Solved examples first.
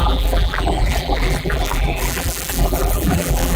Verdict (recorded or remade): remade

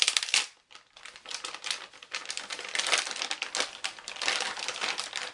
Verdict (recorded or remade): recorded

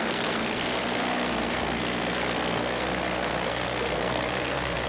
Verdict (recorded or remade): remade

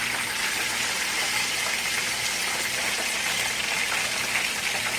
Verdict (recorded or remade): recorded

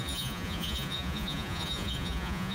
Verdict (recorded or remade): remade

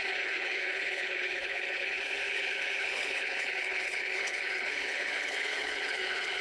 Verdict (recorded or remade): remade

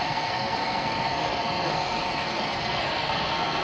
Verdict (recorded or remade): remade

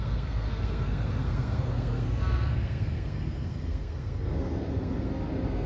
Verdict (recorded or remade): remade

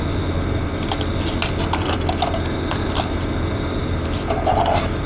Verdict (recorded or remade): recorded